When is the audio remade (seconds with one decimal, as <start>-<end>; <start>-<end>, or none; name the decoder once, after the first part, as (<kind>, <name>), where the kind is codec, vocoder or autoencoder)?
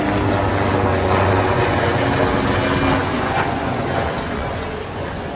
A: 0.9-2.0 (vocoder, Vocos); 3.0-5.4